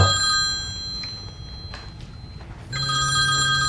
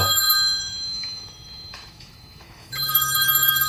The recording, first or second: first